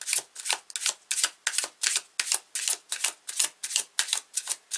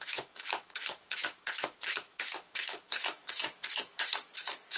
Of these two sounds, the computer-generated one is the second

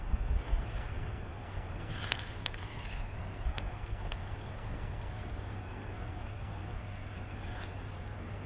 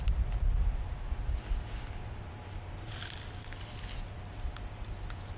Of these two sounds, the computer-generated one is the first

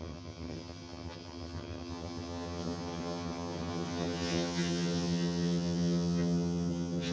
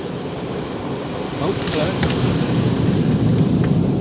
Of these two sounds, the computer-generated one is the first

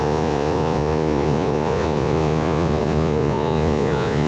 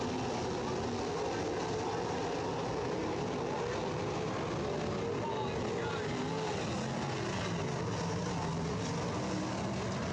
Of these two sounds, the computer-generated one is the first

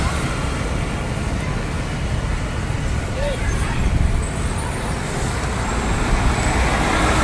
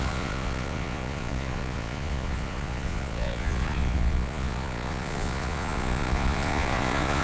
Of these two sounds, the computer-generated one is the second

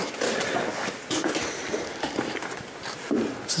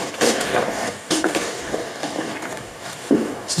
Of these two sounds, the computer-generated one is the second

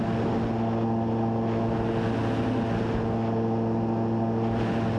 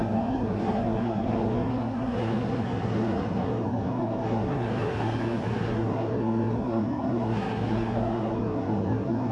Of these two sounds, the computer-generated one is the second